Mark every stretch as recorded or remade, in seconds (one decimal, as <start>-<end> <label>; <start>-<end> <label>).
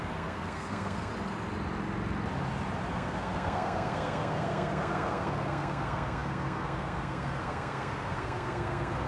0.0-1.1 remade; 1.1-2.9 recorded; 2.9-9.1 remade